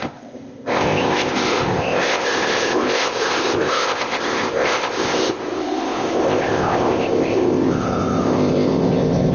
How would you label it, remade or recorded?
remade